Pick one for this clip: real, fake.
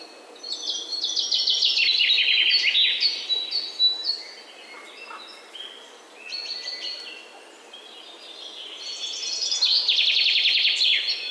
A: real